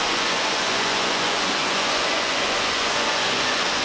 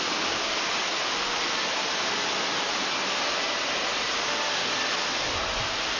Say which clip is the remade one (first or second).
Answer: first